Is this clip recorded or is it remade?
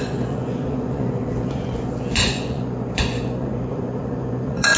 remade